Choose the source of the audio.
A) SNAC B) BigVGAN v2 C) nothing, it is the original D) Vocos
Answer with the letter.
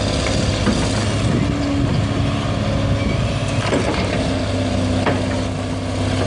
C